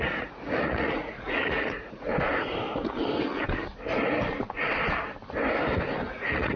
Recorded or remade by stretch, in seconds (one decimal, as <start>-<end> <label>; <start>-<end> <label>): 0.0-2.1 remade; 2.1-6.1 recorded; 6.1-6.6 remade